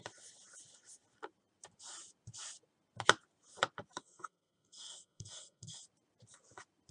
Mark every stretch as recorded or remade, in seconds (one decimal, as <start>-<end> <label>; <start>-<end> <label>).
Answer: 0.0-4.0 recorded; 4.0-5.8 remade; 5.8-6.9 recorded